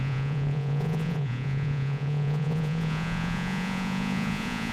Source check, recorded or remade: remade